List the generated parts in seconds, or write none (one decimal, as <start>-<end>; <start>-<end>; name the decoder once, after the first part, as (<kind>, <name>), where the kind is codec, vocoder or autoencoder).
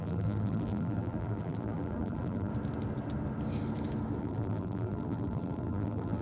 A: 0.0-2.5 (vocoder, BigVGAN v2); 4.2-6.2